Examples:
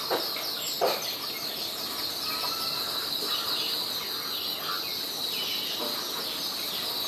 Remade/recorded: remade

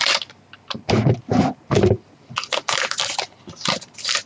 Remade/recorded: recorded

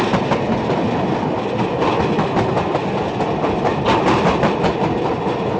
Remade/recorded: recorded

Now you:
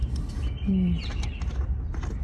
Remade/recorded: recorded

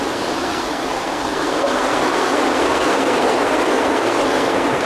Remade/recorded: remade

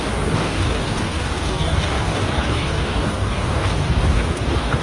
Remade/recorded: remade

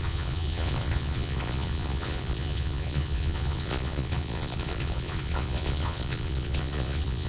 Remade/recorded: remade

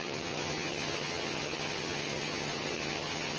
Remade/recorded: remade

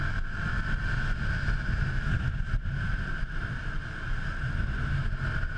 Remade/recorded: remade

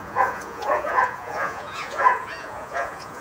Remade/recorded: remade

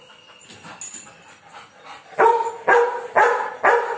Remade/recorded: recorded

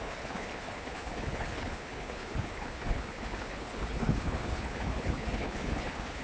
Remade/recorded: remade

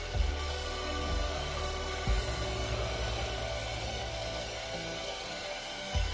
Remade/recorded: remade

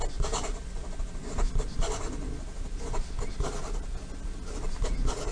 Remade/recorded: recorded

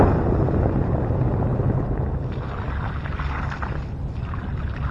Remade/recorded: recorded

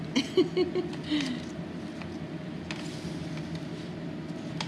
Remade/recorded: recorded